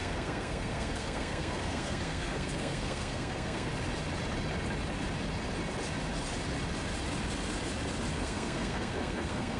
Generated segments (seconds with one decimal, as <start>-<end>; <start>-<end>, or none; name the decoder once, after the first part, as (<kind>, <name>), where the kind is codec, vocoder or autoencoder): 0.0-3.7 (codec, SNAC); 8.1-9.6